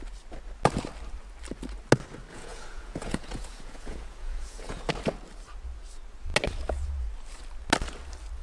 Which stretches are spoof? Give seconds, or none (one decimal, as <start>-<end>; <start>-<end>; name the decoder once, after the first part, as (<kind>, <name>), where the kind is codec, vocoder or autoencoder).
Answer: 2.3-4.9 (vocoder, Vocos)